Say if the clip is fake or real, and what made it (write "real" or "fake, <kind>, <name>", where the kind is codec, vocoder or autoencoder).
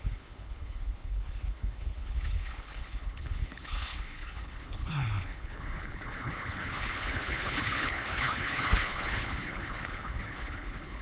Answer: fake, codec, HILCodec